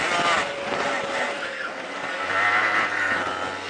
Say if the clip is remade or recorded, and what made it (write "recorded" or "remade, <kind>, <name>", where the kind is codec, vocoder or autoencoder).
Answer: recorded